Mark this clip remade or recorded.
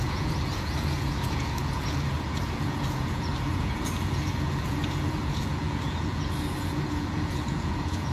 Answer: remade